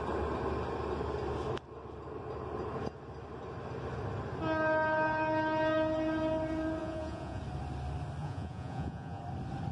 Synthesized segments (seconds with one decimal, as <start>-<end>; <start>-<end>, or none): 6.8-7.4; 8.2-9.2